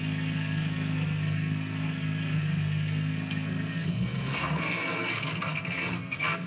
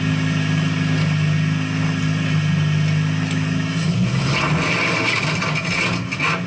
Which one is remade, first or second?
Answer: first